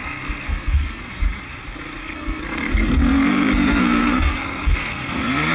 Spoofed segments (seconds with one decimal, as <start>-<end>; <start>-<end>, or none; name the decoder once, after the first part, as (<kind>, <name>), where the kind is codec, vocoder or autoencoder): 0.0-1.1 (codec, SNAC); 2.0-5.5